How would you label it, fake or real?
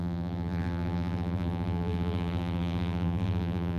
fake